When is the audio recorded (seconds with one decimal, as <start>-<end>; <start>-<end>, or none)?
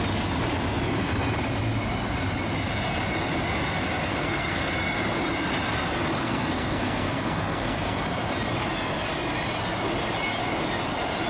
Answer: 0.0-4.1; 4.7-6.2; 8.0-11.3